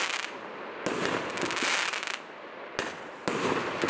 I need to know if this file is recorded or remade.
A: recorded